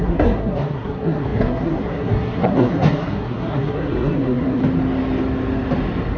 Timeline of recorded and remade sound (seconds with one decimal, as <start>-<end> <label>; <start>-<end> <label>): 0.0-4.6 remade; 4.6-6.2 recorded

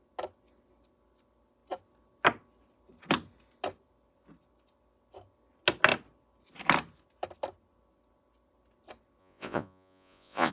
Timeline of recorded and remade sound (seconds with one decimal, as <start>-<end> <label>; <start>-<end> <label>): 0.0-9.2 recorded; 9.2-10.5 remade

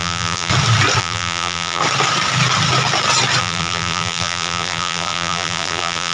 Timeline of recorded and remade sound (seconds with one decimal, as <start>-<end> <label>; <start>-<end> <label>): 0.0-0.5 remade; 0.5-1.0 recorded; 1.0-1.8 remade; 1.8-3.4 recorded; 3.4-6.1 remade

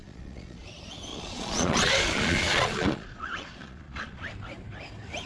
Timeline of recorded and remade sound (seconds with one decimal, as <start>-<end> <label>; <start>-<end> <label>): 0.0-0.7 remade; 0.7-1.1 recorded; 1.1-4.3 remade; 4.3-5.3 recorded

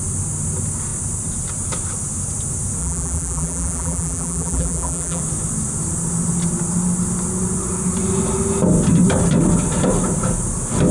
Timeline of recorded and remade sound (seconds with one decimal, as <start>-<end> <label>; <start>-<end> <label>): 0.0-2.8 recorded; 2.8-5.2 remade; 5.2-10.9 recorded

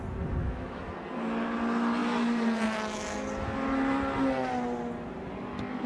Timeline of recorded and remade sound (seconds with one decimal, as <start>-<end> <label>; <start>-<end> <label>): 0.0-0.4 recorded; 0.4-0.9 remade; 0.9-5.9 recorded